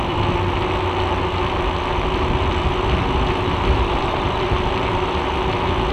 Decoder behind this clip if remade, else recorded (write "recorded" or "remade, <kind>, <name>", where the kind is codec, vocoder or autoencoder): recorded